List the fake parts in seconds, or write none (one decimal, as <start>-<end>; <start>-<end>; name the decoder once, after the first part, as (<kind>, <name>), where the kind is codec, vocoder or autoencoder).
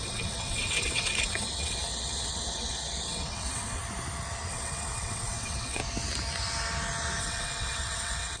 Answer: 0.0-3.8 (vocoder, WaveNeXt); 4.5-5.8; 7.2-8.4